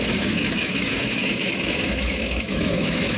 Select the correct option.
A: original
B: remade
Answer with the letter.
B